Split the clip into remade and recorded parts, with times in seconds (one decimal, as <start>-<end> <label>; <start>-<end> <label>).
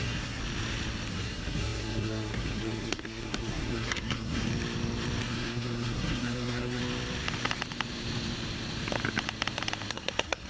0.0-0.4 remade; 0.4-1.1 recorded; 1.1-4.5 remade; 4.5-5.2 recorded; 5.2-6.8 remade; 6.8-9.9 recorded; 9.9-10.5 remade